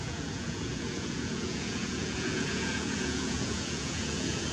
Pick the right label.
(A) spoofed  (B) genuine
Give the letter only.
A